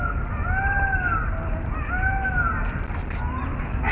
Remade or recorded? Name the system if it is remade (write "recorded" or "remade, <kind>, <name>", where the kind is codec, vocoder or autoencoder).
recorded